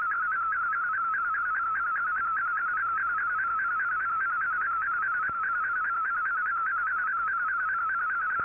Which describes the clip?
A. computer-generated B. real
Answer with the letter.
B